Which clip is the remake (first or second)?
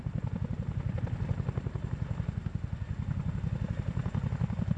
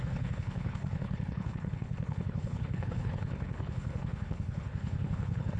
second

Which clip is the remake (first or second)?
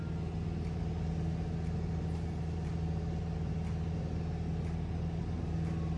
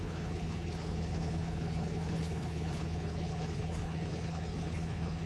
second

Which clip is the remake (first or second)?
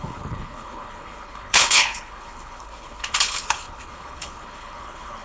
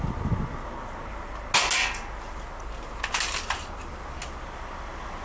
first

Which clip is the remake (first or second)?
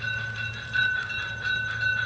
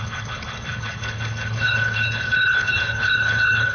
second